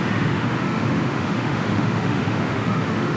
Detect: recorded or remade remade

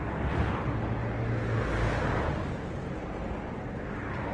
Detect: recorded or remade recorded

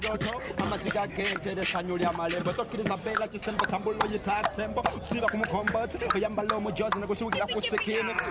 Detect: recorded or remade recorded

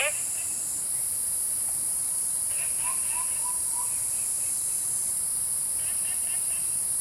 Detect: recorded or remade remade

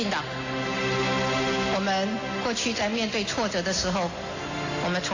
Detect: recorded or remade recorded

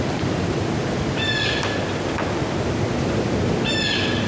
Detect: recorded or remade recorded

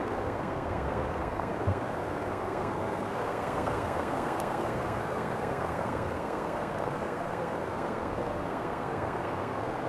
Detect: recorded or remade remade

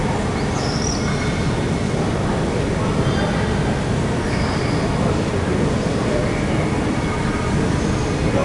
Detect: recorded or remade recorded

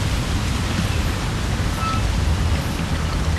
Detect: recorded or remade recorded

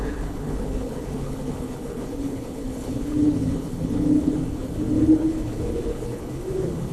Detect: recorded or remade remade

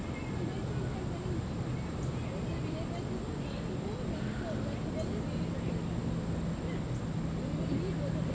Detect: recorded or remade recorded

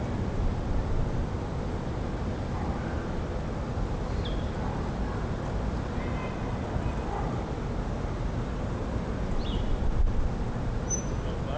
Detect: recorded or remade recorded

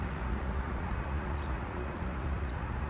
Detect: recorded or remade remade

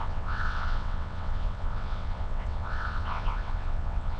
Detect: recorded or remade remade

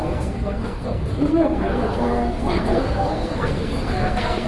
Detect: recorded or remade remade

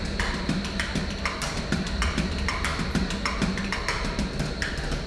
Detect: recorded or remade recorded